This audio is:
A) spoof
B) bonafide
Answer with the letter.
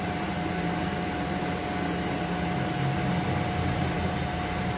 B